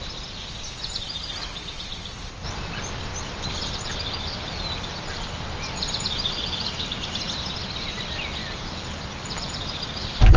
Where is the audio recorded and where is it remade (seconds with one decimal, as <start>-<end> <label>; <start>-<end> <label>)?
0.0-10.4 recorded